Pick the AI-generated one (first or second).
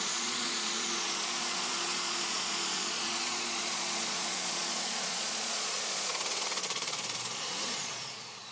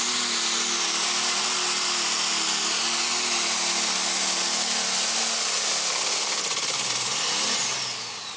first